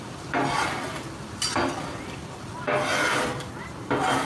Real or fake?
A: real